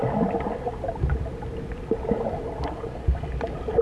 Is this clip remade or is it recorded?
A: recorded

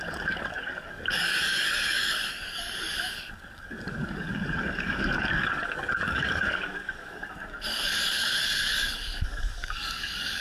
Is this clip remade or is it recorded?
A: remade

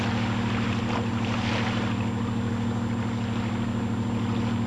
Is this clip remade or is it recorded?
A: recorded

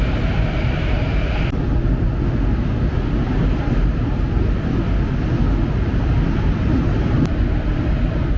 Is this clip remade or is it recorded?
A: recorded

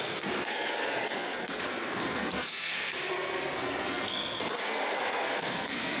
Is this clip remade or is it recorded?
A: remade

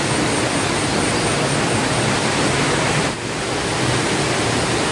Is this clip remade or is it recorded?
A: recorded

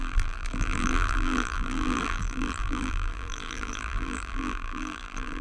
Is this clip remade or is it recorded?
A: remade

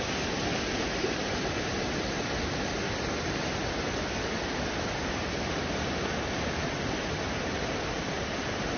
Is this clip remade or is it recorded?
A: recorded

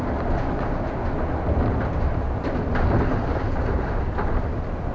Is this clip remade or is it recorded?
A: recorded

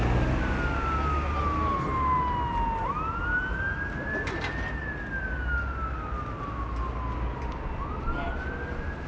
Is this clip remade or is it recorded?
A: recorded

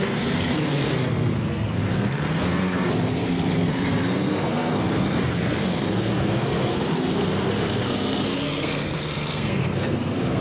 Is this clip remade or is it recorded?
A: remade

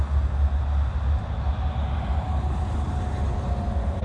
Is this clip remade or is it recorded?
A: recorded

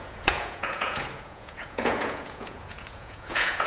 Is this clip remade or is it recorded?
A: remade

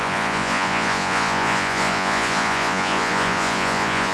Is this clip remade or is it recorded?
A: remade